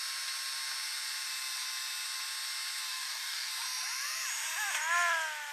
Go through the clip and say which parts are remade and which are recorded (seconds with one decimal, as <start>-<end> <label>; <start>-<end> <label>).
0.0-2.9 recorded; 2.9-3.5 remade; 3.5-5.5 recorded